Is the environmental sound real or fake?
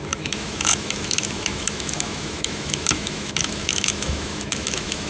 fake